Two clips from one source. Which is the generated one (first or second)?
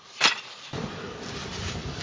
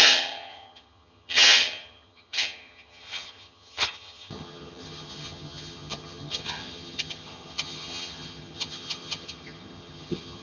second